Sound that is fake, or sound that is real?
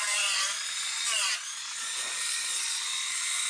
fake